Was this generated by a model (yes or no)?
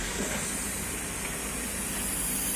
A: no